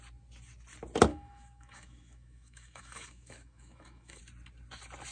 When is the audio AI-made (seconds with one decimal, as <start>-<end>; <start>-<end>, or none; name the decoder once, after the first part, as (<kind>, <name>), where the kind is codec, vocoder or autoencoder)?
1.1-4.2 (autoencoder, DAC-VAE)